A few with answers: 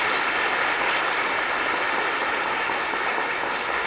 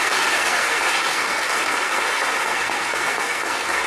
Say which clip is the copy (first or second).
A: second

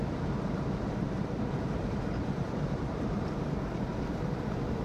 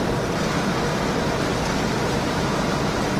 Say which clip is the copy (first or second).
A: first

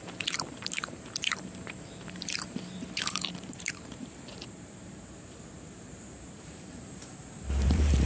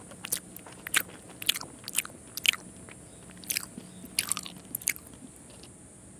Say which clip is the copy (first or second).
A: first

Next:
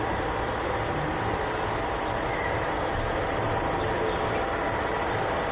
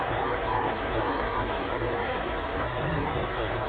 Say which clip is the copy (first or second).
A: second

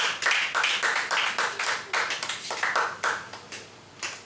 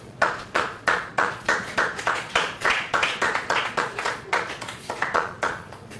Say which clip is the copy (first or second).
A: second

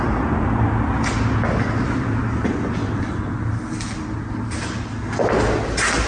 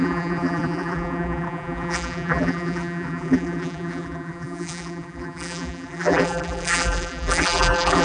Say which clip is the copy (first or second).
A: second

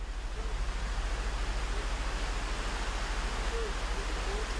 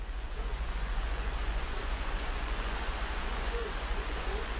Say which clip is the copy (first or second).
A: second